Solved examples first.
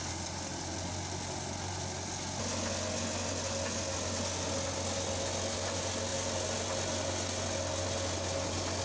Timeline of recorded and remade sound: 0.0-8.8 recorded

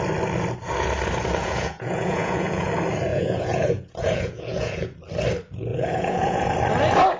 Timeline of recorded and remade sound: 0.0-1.4 recorded; 1.4-2.7 remade; 2.7-3.1 recorded; 3.1-5.0 remade; 5.0-5.7 recorded; 5.7-6.5 remade; 6.5-7.2 recorded

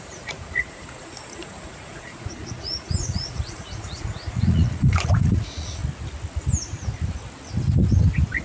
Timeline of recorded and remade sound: 0.0-5.8 remade; 5.8-8.4 recorded

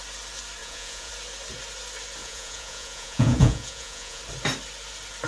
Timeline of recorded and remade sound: 0.0-0.6 recorded; 0.6-1.1 remade; 1.1-2.2 recorded; 2.2-4.2 remade; 4.2-5.3 recorded

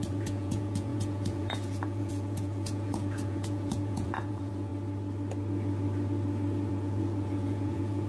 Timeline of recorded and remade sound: 0.0-4.7 remade; 4.7-6.7 recorded; 6.7-8.1 remade